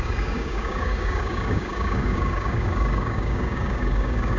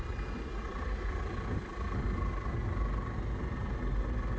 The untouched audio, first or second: second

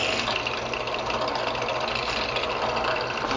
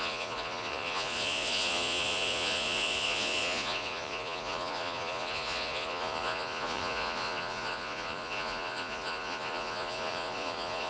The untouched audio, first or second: first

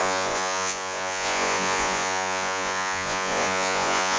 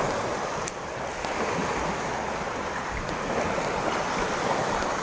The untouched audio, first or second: second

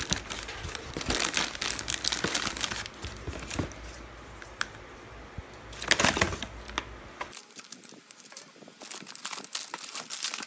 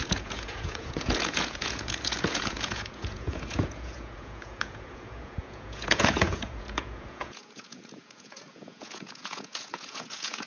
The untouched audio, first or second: first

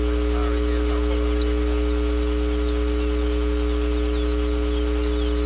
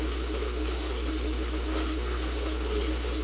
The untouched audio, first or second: first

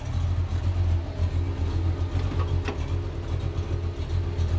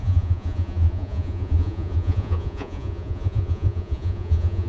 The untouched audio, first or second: first